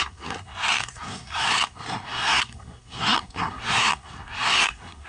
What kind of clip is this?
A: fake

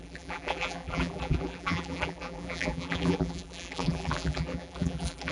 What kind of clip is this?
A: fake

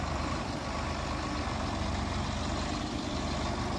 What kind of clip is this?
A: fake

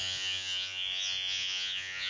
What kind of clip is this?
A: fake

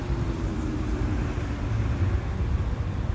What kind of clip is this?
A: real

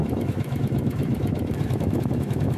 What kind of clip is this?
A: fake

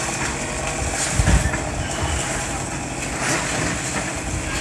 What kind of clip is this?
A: real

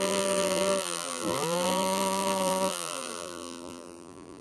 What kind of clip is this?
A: fake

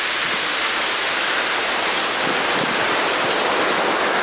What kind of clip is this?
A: real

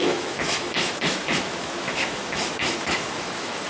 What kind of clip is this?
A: fake